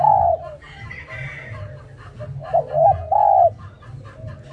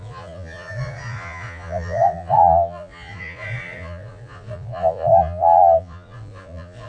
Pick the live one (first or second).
first